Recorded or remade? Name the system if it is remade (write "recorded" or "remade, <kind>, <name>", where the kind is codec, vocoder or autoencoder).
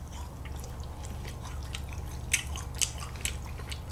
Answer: recorded